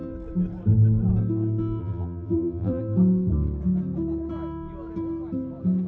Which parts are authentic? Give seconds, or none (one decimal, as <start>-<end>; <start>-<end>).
0.0-1.8; 2.8-5.9